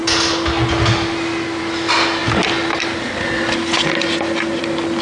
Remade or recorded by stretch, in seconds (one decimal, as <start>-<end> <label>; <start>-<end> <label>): 0.0-5.0 recorded

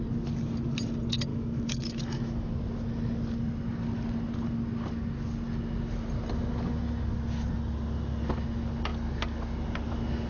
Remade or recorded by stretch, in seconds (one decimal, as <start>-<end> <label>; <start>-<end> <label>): 0.0-1.3 recorded; 1.3-2.5 remade; 2.5-10.3 recorded